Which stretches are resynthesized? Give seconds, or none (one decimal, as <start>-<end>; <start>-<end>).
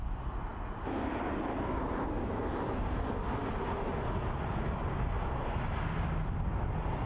none